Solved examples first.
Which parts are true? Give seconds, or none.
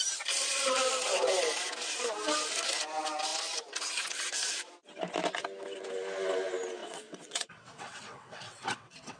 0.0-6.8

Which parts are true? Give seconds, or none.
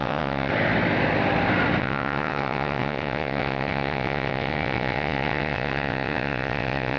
0.5-1.8